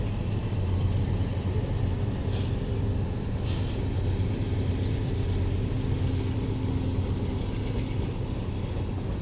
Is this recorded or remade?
recorded